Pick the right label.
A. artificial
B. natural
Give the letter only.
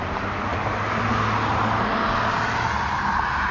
B